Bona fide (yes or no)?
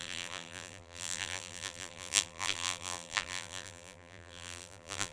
no